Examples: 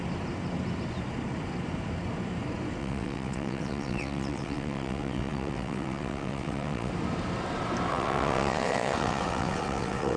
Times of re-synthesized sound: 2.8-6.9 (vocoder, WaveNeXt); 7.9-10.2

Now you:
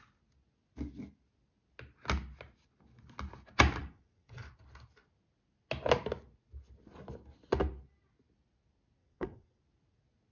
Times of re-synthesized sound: 3.8-4.5 (vocoder, WaveNeXt); 9.0-9.6

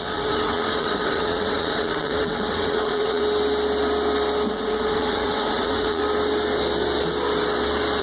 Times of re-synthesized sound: 0.0-3.2 (vocoder, WaveNeXt); 4.5-6.0

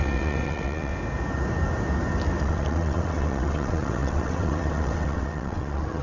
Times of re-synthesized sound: 0.0-0.9 (vocoder, WaveNeXt); 2.4-6.0

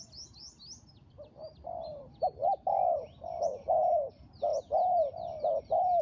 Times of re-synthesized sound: none

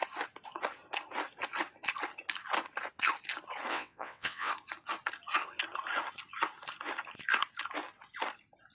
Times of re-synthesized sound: 3.7-4.5 (vocoder, WaveNeXt)

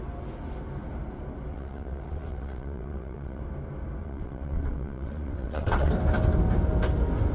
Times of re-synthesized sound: 1.5-3.4 (vocoder, WaveNeXt); 4.0-5.9

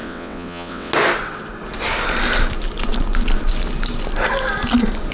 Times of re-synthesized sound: 0.0-0.9 (vocoder, WaveNeXt)